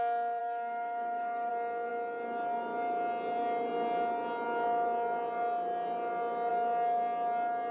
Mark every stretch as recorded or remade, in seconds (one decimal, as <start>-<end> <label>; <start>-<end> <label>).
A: 0.0-0.4 recorded; 0.4-1.5 remade; 1.5-7.7 recorded